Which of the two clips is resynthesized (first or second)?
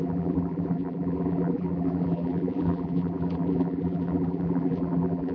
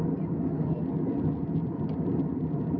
first